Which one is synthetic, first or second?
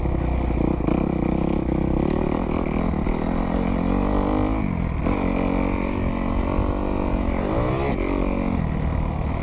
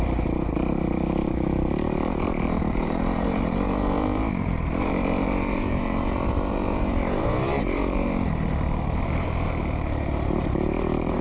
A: second